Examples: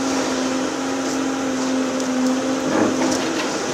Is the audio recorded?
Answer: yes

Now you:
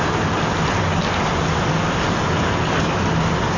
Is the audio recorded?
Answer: yes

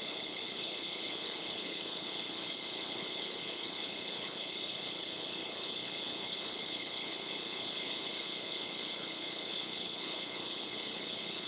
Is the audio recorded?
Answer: no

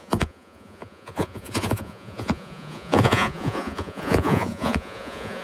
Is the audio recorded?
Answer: no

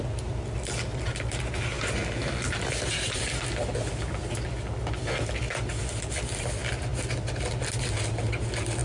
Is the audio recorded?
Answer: yes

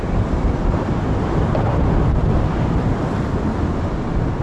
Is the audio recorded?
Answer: yes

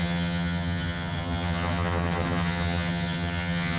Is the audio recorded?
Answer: no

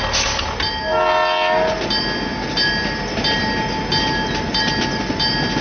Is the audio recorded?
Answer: yes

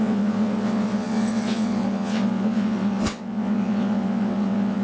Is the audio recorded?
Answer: no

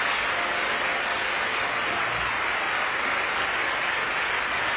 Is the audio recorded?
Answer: yes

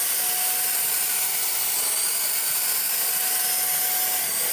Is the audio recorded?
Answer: yes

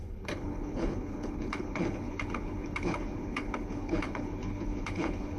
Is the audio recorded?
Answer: no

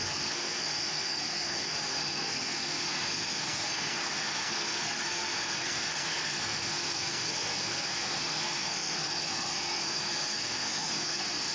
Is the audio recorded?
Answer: no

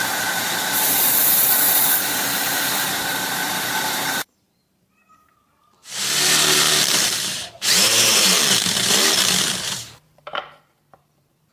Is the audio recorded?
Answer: no